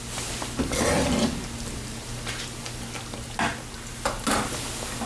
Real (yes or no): yes